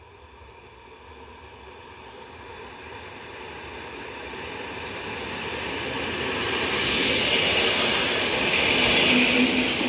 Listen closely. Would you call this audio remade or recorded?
recorded